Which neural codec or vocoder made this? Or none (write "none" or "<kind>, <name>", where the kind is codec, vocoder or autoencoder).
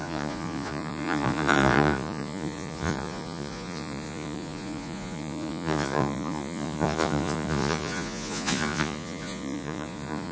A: vocoder, Vocos